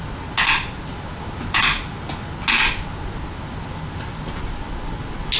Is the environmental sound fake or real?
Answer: real